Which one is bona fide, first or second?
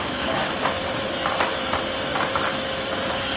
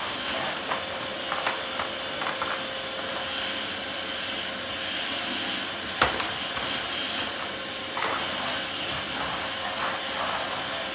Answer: second